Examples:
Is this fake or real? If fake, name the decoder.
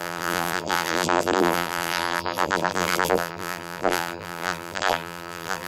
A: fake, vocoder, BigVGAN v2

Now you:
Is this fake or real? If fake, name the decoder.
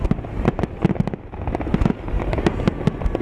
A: real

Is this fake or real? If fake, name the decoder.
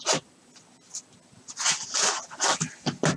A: real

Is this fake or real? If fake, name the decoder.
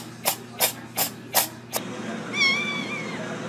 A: real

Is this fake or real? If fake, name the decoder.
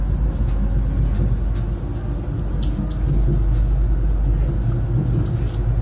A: real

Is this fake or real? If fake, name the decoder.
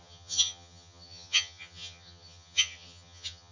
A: fake, vocoder, HiFi-GAN